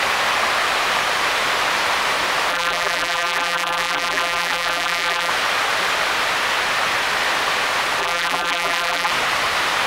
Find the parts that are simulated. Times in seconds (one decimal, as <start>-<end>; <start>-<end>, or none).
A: 2.5-5.3; 8.0-9.1